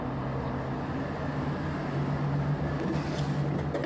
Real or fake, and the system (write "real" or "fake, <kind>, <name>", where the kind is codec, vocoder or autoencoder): real